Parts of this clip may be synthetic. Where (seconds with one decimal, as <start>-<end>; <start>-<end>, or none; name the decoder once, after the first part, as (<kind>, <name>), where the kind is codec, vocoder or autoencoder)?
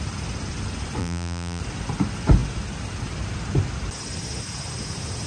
1.0-1.6 (vocoder, BigVGAN v2)